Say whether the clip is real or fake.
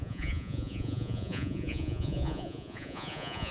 fake